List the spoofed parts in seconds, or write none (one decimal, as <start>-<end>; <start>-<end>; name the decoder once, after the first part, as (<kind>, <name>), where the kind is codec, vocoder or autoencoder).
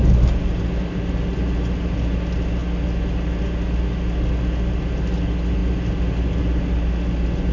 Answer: none